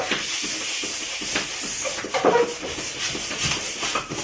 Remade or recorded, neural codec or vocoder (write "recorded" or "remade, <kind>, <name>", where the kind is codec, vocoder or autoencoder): recorded